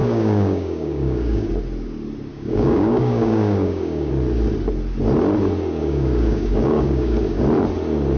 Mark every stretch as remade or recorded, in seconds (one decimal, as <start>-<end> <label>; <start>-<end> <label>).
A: 0.0-1.5 remade; 1.5-2.3 recorded; 2.3-4.1 remade; 4.1-5.8 recorded; 5.8-7.4 remade; 7.4-8.2 recorded